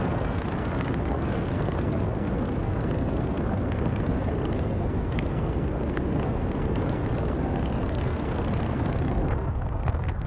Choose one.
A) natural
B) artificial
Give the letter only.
B